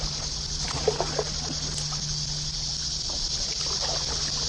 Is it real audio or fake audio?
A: real